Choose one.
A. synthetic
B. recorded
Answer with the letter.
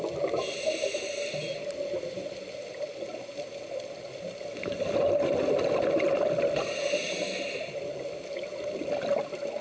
B